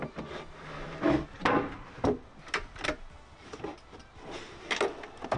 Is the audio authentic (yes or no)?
yes